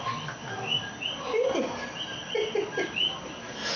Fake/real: real